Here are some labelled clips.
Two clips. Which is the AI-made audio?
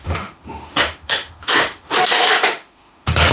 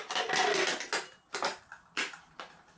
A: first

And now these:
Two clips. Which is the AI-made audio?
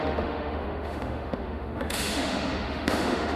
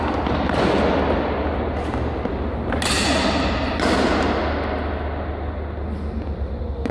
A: first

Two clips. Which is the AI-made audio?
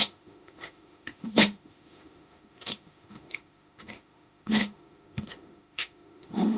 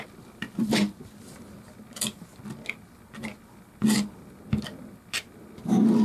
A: first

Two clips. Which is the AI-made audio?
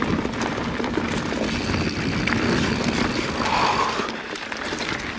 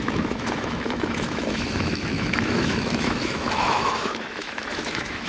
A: second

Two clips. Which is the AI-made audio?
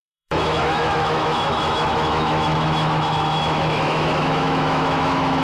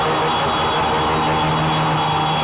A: first